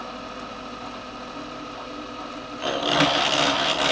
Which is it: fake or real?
real